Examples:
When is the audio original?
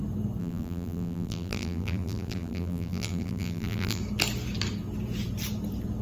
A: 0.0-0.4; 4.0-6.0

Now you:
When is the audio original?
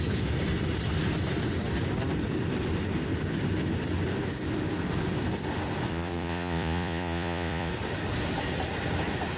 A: 0.0-5.9; 7.7-9.4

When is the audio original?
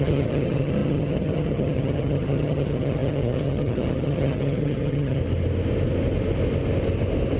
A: 5.2-7.4